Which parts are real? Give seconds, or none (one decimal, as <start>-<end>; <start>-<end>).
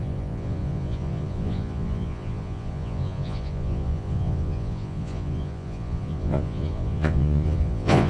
none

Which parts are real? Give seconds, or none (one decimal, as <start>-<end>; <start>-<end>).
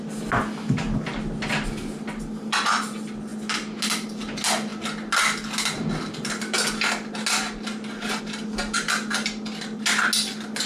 0.0-10.7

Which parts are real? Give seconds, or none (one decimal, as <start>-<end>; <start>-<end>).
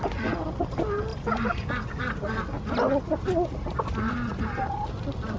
0.0-5.4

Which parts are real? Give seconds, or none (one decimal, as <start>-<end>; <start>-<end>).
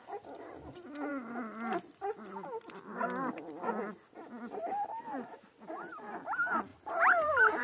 0.0-6.7